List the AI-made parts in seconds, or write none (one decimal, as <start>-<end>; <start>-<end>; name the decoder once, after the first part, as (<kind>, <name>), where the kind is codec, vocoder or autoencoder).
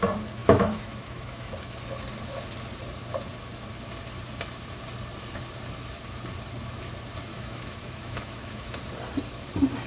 0.4-1.5 (autoencoder, DAC-VAE); 7.3-8.8